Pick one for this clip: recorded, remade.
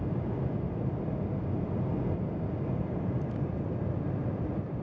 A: recorded